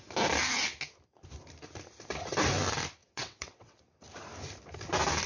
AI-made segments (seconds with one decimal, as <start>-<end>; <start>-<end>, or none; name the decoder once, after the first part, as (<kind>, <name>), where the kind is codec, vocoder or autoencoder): 3.0-3.8 (vocoder, WaveNeXt)